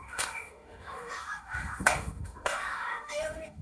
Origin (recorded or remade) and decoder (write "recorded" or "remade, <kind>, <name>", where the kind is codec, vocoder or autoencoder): remade, autoencoder, DAC-VAE